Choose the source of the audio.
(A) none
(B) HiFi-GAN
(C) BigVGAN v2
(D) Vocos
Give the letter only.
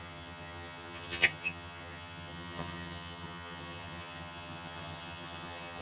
B